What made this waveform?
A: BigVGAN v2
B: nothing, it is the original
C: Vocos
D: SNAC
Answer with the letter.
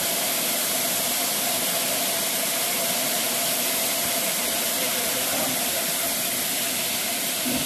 A